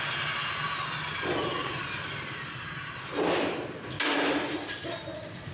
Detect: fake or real real